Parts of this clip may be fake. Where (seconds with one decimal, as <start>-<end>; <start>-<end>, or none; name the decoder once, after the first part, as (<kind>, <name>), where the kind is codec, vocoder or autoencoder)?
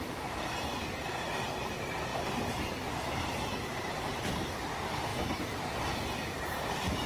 2.1-4.5 (vocoder, BigVGAN v2)